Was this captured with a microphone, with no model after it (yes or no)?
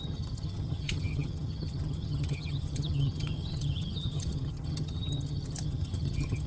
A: no